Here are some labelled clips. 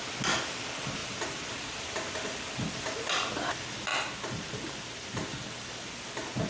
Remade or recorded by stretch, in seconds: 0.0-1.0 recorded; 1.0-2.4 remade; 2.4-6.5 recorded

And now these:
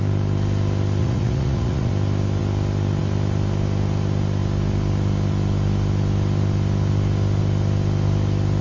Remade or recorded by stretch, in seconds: 0.0-1.0 recorded; 1.0-1.9 remade; 1.9-8.6 recorded

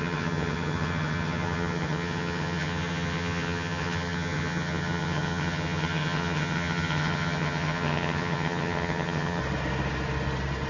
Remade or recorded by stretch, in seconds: 0.0-9.4 remade; 9.4-10.7 recorded

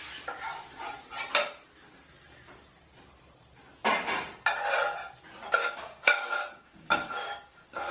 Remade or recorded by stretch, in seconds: 0.0-5.6 recorded; 5.6-7.9 remade

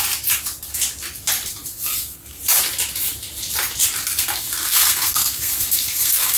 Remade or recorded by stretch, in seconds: 0.0-1.7 recorded; 1.7-2.4 remade; 2.4-4.1 recorded; 4.1-6.4 remade